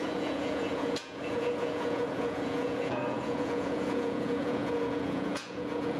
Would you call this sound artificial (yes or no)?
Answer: yes